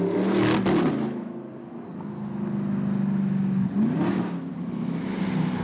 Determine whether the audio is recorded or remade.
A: recorded